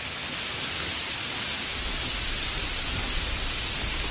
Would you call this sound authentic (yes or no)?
yes